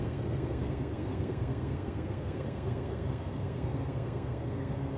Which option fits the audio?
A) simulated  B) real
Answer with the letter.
A